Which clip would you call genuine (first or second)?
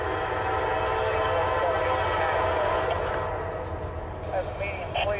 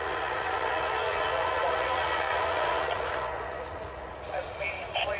first